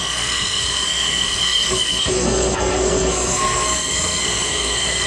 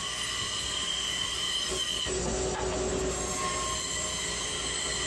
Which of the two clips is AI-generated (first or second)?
first